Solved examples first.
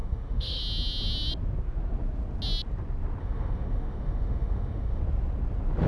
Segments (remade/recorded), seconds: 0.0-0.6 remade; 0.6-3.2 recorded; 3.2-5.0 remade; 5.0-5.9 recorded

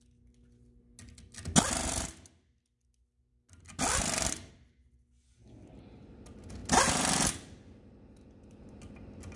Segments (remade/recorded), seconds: 0.0-9.4 recorded

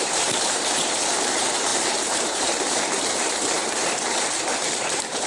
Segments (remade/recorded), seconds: 0.0-5.3 remade

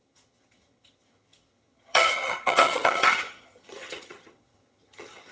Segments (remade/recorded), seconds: 0.0-5.3 remade

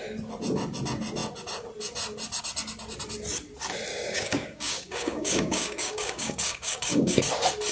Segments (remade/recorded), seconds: 0.0-3.9 recorded; 3.9-7.2 remade; 7.2-7.7 recorded

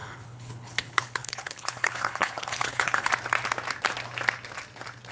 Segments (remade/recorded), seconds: 0.0-3.1 remade; 3.1-5.1 recorded

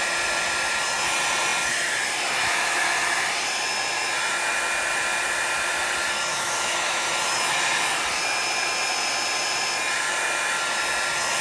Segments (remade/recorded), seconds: 0.0-6.3 recorded; 6.3-7.1 remade; 7.1-11.4 recorded